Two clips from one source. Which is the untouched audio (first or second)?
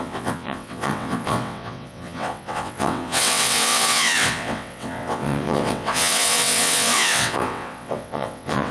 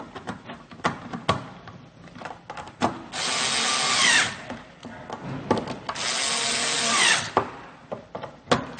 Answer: second